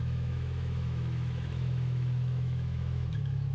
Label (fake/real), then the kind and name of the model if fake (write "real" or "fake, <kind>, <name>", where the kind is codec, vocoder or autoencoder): fake, autoencoder, DAC-VAE